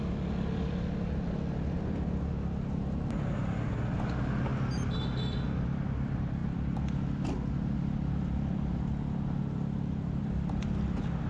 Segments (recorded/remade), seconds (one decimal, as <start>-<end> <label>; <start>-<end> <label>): 0.0-11.3 recorded